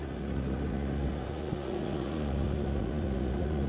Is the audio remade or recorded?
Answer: remade